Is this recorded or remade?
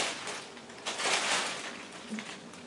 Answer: remade